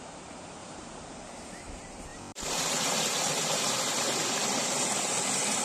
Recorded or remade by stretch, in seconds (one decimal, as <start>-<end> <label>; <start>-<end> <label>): 0.0-0.6 recorded; 0.6-1.5 remade; 1.5-2.1 recorded; 2.1-2.6 remade; 2.6-5.6 recorded